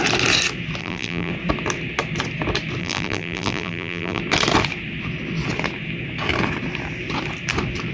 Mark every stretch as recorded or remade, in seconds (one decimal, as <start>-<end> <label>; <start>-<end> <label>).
0.0-0.8 recorded; 0.8-1.3 remade; 1.3-2.8 recorded; 2.8-4.2 remade; 4.2-7.9 recorded